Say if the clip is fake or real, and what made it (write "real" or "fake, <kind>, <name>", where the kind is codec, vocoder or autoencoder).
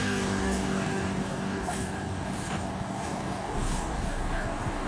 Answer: fake, codec, DAC